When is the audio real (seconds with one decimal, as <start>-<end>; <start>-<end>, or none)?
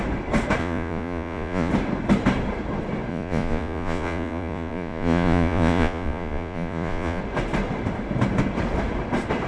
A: 0.0-0.6; 1.7-3.1; 7.2-9.5